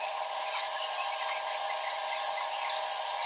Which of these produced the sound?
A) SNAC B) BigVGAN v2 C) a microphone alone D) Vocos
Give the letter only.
C